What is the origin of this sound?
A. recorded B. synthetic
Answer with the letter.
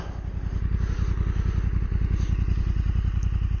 A